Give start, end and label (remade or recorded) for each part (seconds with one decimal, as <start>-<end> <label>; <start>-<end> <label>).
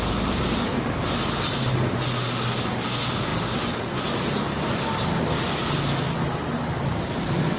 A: 0.0-7.6 recorded